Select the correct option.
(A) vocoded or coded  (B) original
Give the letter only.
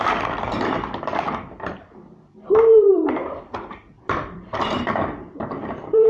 A